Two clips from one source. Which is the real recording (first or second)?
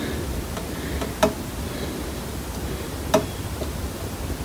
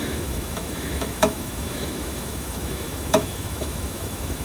first